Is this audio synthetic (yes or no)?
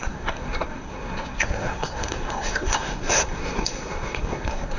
yes